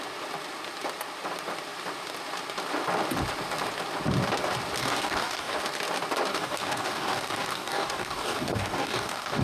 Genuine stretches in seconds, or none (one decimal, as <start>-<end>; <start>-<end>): 0.0-4.8; 5.6-6.3